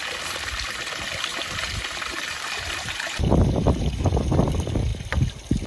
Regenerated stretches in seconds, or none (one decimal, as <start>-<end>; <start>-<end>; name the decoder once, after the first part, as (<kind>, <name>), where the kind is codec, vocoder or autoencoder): 1.3-4.0 (vocoder, BigVGAN v2)